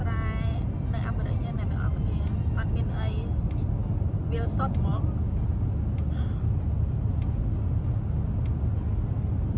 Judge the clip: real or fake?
real